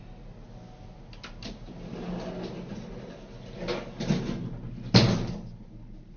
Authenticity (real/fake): real